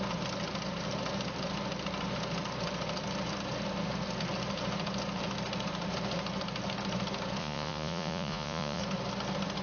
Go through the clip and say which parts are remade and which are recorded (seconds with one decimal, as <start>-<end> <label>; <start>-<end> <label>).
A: 0.0-7.4 recorded; 7.4-8.8 remade; 8.8-9.6 recorded